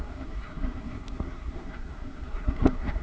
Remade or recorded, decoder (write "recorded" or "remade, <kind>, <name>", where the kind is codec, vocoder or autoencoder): remade, codec, SNAC